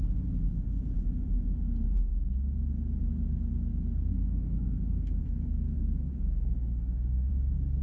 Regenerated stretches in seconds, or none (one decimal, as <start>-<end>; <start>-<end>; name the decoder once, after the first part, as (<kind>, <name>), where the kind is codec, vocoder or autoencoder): 4.1-7.3 (codec, SNAC)